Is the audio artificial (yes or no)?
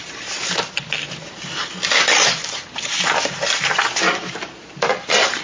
no